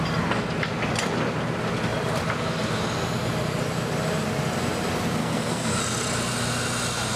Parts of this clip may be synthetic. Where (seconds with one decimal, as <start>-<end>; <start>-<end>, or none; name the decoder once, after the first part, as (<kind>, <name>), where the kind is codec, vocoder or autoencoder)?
5.2-5.8 (codec, SNAC)